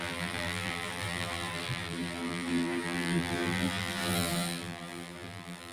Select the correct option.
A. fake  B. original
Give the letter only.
A